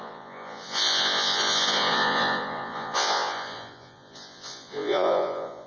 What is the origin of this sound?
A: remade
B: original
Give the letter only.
A